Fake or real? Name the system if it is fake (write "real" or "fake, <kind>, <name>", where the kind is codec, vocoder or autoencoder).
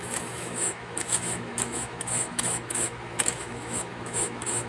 fake, autoencoder, DAC-VAE